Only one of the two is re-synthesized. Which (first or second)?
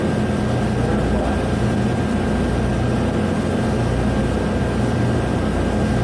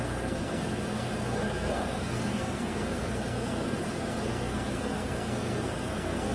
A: second